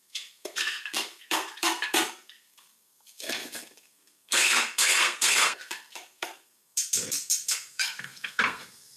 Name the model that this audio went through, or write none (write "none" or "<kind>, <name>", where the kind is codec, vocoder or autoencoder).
codec, SNAC